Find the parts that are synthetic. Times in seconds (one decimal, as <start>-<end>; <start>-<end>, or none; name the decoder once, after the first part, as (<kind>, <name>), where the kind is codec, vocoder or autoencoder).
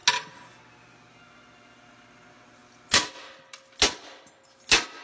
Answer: none